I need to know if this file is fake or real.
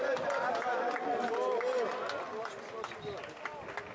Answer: real